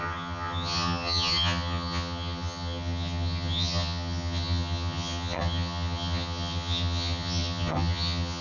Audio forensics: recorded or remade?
remade